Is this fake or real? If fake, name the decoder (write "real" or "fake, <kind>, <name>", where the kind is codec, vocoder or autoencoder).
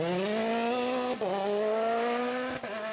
real